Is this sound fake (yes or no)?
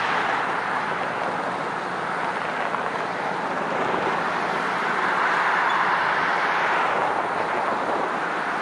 no